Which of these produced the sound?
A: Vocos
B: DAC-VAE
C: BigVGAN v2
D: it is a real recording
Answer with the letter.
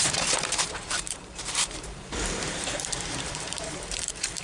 C